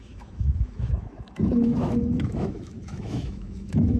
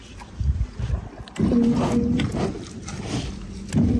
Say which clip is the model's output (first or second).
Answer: first